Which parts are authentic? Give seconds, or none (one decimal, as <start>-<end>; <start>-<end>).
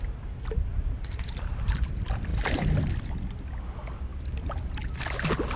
0.0-0.7; 1.7-2.3; 3.0-4.1; 4.7-5.6